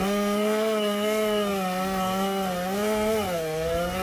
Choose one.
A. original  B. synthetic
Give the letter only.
B